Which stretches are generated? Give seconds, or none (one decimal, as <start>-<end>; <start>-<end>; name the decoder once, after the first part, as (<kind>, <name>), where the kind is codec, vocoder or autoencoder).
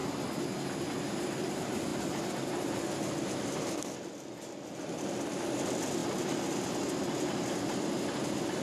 none